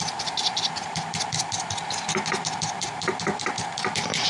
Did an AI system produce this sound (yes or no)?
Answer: no